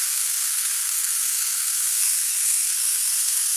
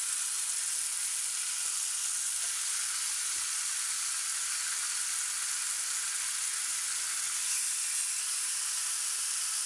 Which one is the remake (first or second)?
first